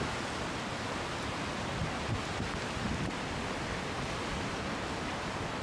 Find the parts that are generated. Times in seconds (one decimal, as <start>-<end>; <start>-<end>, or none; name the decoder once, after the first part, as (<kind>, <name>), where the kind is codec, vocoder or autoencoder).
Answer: none